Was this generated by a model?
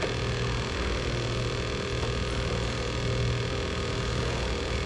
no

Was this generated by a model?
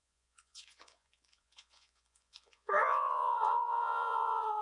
yes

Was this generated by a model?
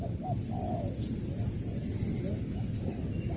no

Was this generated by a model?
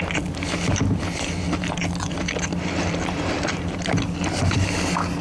no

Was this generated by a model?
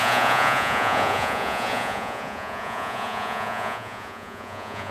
yes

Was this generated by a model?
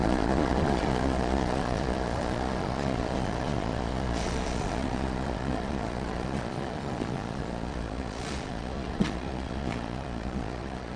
yes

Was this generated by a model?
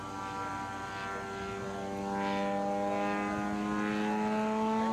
no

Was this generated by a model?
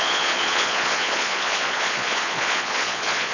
yes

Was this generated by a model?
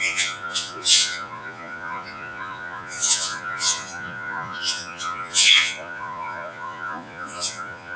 yes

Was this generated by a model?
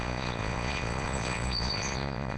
yes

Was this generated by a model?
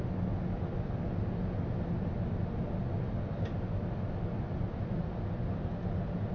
no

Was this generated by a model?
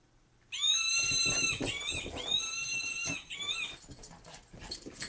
no